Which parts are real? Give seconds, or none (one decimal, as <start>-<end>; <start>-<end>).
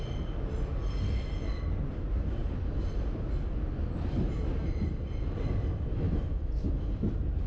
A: 0.0-5.9; 6.9-7.5